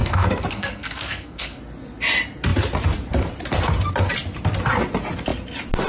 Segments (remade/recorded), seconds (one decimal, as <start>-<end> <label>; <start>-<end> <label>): 0.0-1.6 remade; 1.6-5.9 recorded

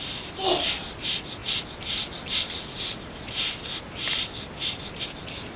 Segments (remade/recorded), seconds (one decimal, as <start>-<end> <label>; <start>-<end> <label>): 0.0-5.6 recorded